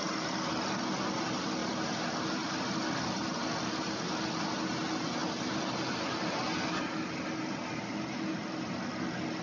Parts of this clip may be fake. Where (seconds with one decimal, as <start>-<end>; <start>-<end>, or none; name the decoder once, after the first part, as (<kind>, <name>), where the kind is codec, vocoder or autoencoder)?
none